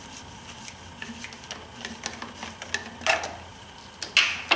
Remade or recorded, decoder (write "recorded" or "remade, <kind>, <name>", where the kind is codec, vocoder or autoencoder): recorded